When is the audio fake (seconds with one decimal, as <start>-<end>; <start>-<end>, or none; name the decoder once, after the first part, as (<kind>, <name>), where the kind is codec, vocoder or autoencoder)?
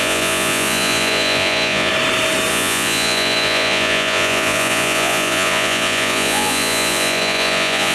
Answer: 0.0-1.9 (vocoder, Vocos); 2.5-7.9